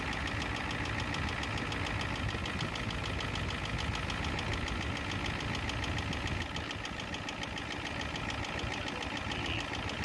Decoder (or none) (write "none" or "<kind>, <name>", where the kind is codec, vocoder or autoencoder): none